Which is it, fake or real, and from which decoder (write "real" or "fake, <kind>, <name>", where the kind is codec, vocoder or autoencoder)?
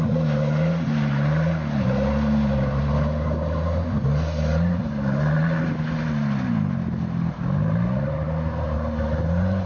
real